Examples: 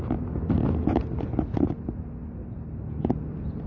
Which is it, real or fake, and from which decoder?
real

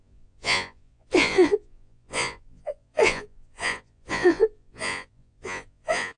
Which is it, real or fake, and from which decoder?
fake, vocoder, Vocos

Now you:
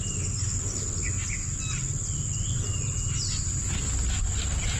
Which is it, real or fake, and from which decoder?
real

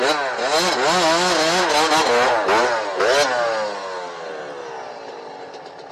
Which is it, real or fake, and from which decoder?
real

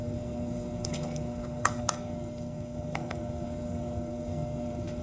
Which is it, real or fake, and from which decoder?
fake, codec, SNAC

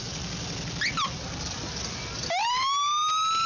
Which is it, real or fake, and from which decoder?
real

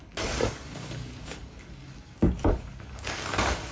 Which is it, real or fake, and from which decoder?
fake, codec, DAC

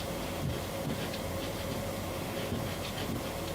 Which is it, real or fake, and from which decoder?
real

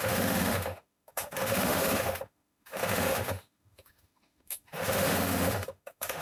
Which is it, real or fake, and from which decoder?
fake, autoencoder, DAC-VAE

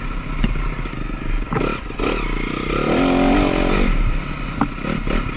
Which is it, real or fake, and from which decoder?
real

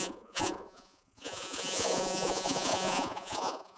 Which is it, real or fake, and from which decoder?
fake, vocoder, Vocos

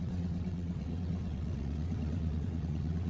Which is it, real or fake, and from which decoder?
fake, vocoder, WaveNeXt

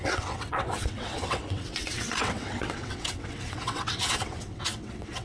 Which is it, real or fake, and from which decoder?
fake, vocoder, WaveNeXt